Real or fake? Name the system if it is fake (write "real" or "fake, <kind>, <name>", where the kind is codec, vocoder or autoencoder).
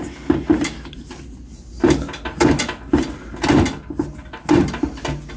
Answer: real